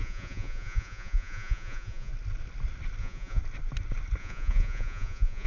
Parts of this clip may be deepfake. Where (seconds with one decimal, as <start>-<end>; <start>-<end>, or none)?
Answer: 0.0-2.1; 3.0-3.4; 4.2-5.5